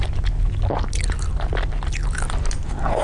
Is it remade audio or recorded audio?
recorded